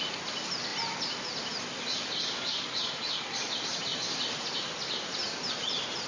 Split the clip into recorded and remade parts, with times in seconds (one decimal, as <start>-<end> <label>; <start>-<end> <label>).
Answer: 0.0-6.1 recorded